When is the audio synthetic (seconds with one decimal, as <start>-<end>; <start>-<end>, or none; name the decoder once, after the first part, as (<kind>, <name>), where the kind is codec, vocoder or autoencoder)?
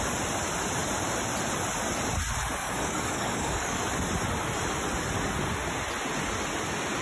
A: 2.6-3.8 (codec, DAC)